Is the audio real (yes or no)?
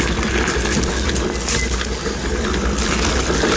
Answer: yes